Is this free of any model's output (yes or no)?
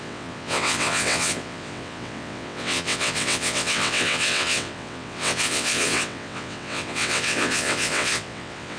no